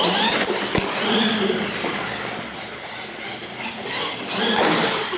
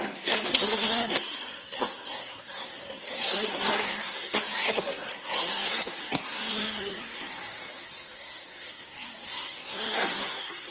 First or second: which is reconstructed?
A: second